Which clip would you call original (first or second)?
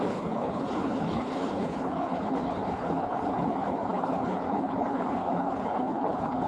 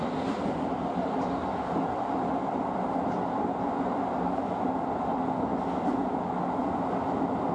second